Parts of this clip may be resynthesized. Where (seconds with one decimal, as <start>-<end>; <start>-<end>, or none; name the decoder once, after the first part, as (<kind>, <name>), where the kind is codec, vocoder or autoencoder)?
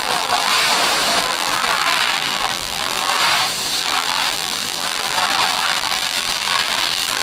0.0-0.5 (vocoder, BigVGAN v2); 1.2-3.2; 3.8-7.2